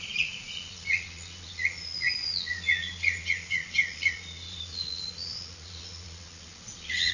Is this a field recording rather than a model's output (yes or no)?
no